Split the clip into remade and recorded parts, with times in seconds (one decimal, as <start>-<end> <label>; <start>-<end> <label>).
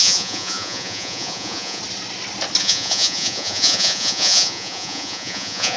0.0-1.8 remade; 1.8-2.6 recorded; 2.6-5.8 remade